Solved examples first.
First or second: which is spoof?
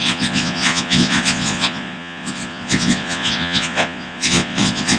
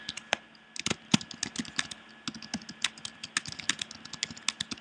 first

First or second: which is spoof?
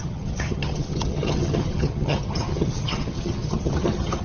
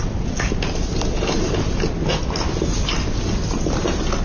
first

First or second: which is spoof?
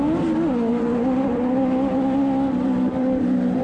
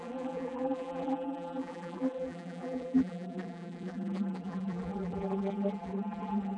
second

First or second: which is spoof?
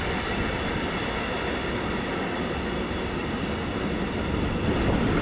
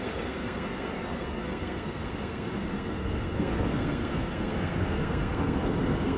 second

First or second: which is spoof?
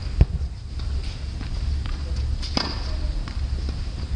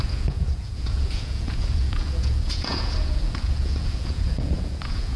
second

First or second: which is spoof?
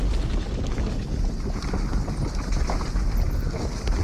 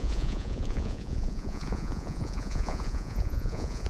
second